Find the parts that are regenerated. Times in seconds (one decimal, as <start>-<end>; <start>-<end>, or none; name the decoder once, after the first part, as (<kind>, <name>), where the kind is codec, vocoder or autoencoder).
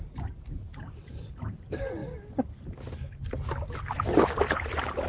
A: none